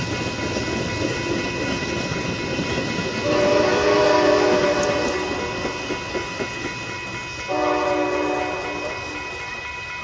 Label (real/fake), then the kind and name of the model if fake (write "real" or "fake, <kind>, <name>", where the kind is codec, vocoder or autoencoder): real